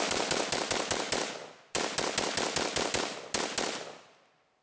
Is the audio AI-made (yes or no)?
no